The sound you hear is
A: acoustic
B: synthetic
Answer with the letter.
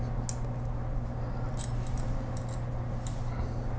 A